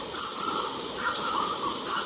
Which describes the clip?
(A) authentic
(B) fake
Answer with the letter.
A